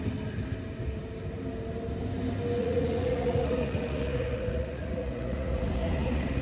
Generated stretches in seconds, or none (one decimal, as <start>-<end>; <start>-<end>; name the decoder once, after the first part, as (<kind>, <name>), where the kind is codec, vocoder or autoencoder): 2.6-6.4 (vocoder, Vocos)